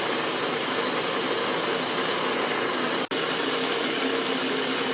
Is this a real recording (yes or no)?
yes